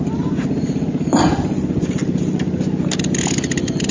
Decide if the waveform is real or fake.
real